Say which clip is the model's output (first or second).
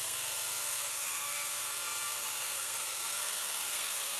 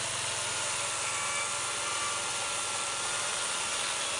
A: first